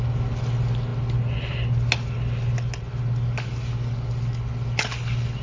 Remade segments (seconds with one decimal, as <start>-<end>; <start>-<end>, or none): none